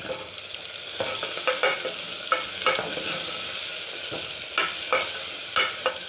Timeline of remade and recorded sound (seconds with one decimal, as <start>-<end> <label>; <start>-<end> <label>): 0.0-6.1 recorded